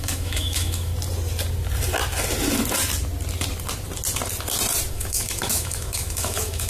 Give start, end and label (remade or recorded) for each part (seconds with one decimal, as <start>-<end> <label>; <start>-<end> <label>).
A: 0.0-0.9 remade; 0.9-4.9 recorded; 4.9-6.7 remade